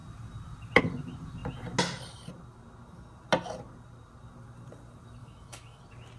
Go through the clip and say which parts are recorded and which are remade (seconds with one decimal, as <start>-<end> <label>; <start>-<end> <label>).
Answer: 0.0-5.2 recorded; 5.2-5.8 remade; 5.8-6.2 recorded